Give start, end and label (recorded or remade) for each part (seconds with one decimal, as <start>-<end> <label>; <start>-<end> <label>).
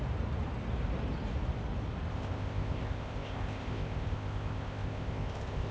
0.0-2.1 recorded; 2.1-5.7 remade